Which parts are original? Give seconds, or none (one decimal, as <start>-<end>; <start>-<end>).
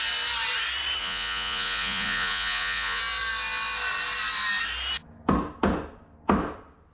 0.0-1.0; 3.0-6.9